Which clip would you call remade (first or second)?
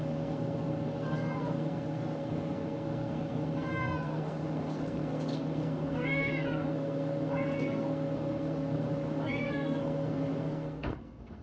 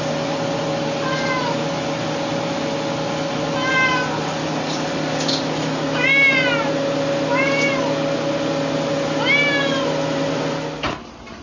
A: first